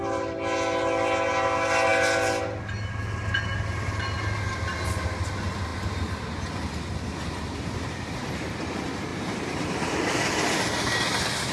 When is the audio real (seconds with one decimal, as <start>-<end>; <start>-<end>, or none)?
0.0-9.1; 10.2-11.5